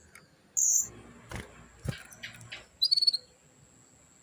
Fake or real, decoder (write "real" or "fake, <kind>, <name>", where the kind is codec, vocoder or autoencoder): real